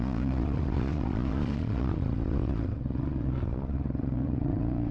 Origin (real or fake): fake